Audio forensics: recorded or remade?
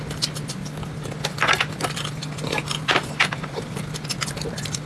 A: recorded